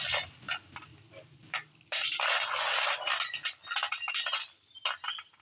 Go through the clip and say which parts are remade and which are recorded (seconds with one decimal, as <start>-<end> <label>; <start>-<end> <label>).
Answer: 0.0-0.9 recorded; 0.9-4.1 remade; 4.1-5.4 recorded